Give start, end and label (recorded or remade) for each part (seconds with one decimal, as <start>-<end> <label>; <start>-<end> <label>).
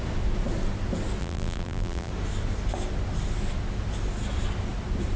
0.0-1.2 recorded; 1.2-2.1 remade; 2.1-5.2 recorded